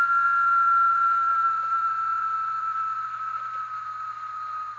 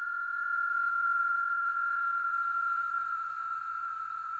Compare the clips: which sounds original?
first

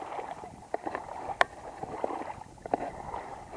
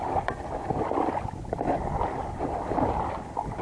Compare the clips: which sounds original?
second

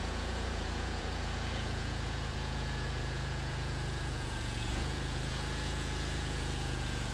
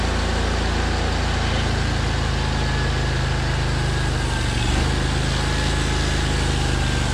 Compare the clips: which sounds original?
second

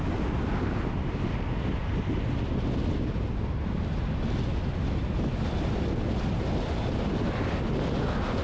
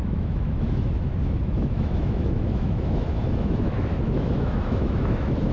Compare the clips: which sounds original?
first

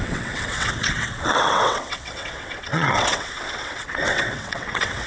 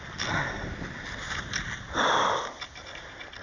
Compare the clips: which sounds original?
second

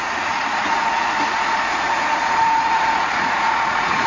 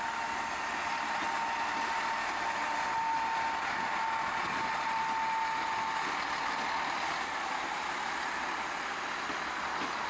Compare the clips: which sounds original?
second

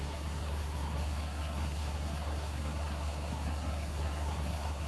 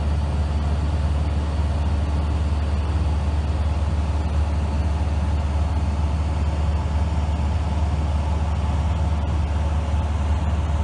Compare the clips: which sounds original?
second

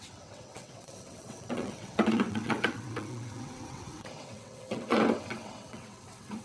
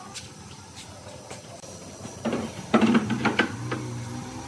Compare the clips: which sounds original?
second